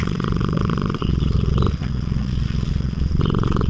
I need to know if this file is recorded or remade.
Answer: remade